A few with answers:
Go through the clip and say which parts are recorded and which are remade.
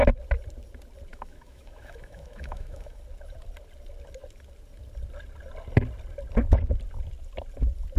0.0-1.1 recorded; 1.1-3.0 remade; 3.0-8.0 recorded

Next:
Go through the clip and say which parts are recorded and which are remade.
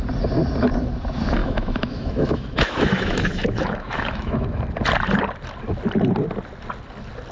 0.0-1.4 recorded; 1.4-4.6 remade; 4.6-7.3 recorded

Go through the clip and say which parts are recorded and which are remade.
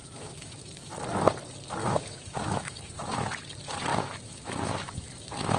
0.0-0.9 remade; 0.9-1.8 recorded; 1.8-3.3 remade; 3.3-3.9 recorded; 3.9-5.6 remade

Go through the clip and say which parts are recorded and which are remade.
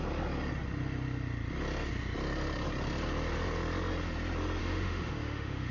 0.0-4.6 recorded; 4.6-5.7 remade